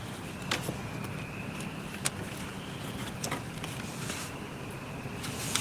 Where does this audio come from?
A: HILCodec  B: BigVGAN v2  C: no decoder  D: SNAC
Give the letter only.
C